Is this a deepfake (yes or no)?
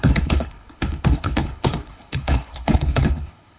yes